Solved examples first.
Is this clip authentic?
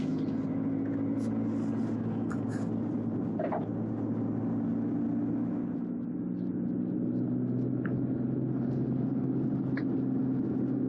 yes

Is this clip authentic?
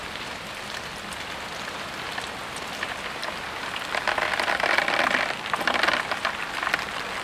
no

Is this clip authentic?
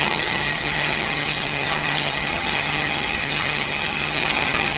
no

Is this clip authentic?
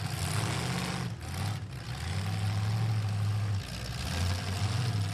yes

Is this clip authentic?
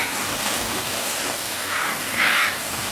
no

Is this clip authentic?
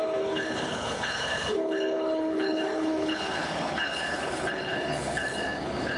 no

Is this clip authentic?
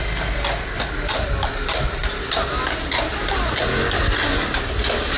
yes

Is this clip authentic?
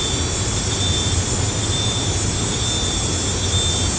yes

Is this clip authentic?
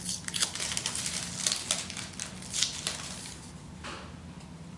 yes